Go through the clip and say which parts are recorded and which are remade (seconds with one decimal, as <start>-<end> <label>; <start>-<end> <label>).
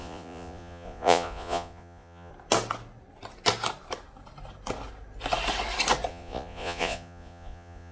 0.0-2.3 remade; 2.3-6.1 recorded; 6.1-7.9 remade